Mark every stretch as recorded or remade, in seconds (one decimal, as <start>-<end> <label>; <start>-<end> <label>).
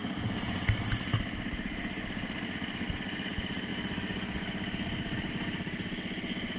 0.0-6.6 recorded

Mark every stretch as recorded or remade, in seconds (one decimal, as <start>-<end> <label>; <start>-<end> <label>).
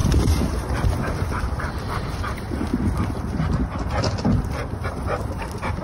0.0-2.7 remade; 2.7-3.9 recorded; 3.9-5.8 remade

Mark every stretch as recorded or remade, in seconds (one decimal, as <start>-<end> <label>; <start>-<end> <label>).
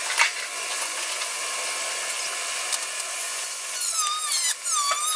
0.0-0.7 recorded; 0.7-1.4 remade; 1.4-3.2 recorded; 3.2-3.9 remade; 3.9-5.2 recorded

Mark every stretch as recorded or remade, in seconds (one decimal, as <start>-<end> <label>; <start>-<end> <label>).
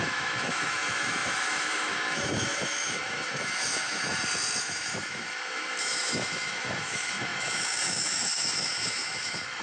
0.0-4.1 remade; 4.1-4.6 recorded; 4.6-9.6 remade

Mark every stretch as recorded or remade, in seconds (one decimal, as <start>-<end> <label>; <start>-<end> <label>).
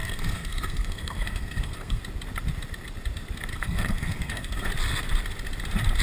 0.0-2.0 remade; 2.0-3.5 recorded; 3.5-4.7 remade; 4.7-6.0 recorded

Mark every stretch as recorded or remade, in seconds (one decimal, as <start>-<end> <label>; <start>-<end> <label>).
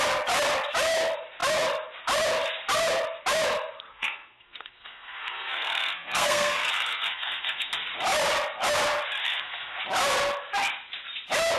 0.0-3.9 recorded; 3.9-7.7 remade; 7.7-9.2 recorded; 9.2-9.8 remade; 9.8-11.6 recorded